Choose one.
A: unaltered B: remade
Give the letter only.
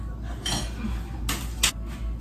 A